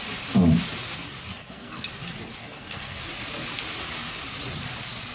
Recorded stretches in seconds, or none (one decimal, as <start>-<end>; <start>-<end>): 0.0-1.3; 1.9-2.4; 3.0-5.1